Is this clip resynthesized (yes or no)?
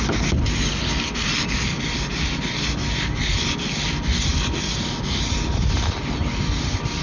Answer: no